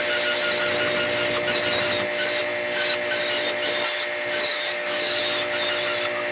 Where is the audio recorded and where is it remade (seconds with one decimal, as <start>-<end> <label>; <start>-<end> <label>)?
0.0-4.5 recorded; 4.5-5.2 remade; 5.2-6.3 recorded